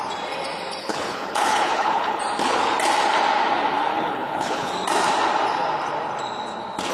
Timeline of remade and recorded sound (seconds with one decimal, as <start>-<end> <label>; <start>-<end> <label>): 0.0-0.8 recorded; 0.8-2.2 remade; 2.2-3.9 recorded; 3.9-4.7 remade; 4.7-6.9 recorded